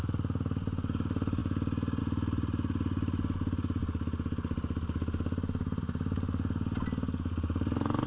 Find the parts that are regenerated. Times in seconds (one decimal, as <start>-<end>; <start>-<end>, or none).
none